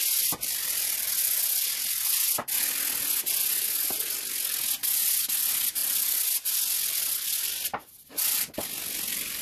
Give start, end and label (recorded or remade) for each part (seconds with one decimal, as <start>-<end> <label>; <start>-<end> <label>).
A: 0.0-9.4 recorded